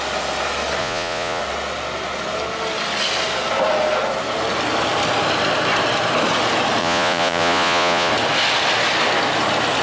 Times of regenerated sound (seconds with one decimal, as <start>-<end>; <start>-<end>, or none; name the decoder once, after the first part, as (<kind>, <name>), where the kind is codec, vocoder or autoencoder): 0.8-1.4 (vocoder, Vocos); 6.8-8.1

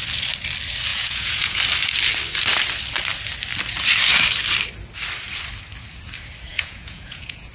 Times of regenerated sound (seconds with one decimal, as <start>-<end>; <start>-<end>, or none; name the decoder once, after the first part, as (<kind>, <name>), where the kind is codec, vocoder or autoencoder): 0.9-1.6 (vocoder, Vocos); 6.5-7.5

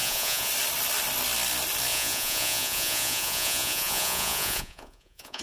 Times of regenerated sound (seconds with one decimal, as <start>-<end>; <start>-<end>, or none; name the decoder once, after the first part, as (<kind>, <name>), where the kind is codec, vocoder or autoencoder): 0.0-0.5 (vocoder, Vocos); 1.9-5.4

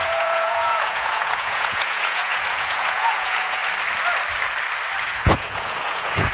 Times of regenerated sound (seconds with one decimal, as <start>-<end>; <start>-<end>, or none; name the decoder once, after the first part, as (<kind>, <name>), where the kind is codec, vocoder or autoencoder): 0.0-3.6 (vocoder, Vocos); 5.0-6.3

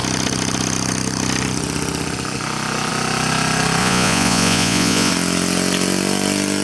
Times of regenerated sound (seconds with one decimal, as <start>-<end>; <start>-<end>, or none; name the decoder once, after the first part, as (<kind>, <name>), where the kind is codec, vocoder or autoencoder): 3.8-5.1 (vocoder, Vocos)

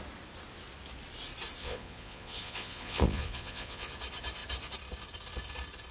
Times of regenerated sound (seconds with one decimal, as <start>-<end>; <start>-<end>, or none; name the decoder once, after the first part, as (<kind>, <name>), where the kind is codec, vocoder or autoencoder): 1.6-3.9 (vocoder, Vocos)

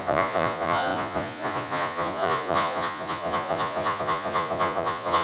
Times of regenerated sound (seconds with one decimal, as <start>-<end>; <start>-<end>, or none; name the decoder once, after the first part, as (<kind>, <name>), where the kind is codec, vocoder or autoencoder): 0.0-5.2 (vocoder, Vocos)

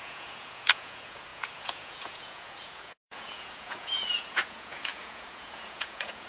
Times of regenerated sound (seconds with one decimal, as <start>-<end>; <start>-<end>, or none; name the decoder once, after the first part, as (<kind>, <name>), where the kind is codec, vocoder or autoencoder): 0.0-6.3 (vocoder, Vocos)